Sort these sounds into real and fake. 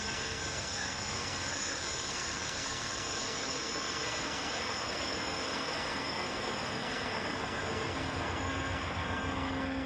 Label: fake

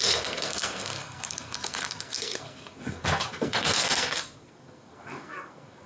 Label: fake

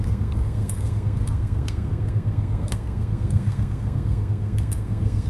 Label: fake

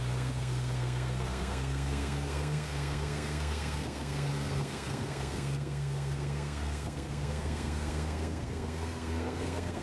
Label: fake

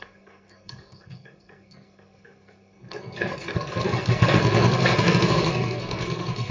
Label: fake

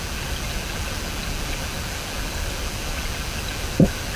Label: real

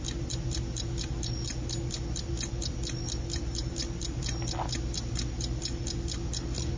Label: real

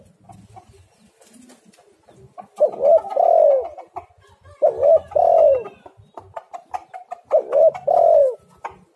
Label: real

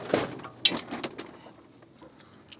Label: real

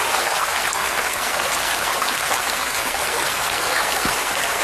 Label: fake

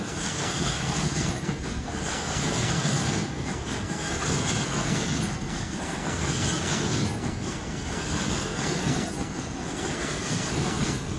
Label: fake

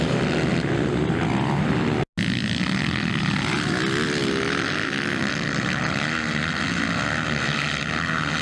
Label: real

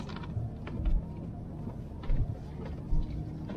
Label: real